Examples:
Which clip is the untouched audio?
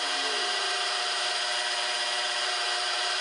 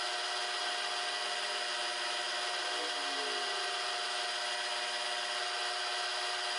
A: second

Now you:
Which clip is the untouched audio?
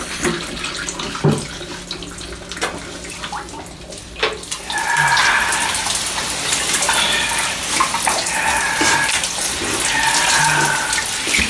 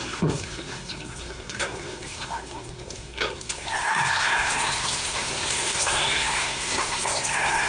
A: first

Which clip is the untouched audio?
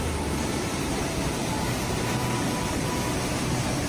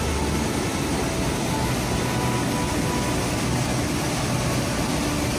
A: second